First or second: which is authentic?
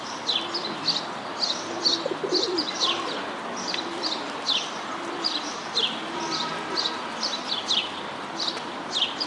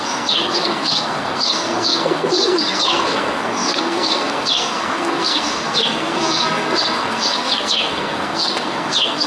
first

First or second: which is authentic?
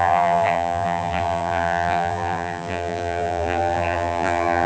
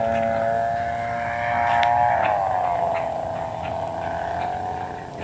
second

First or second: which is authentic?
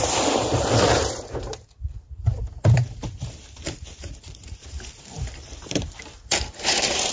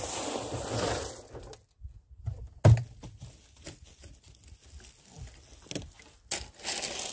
second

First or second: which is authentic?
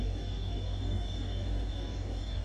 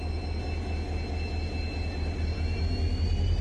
second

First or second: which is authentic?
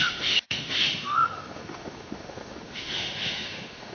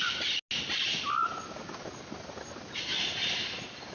second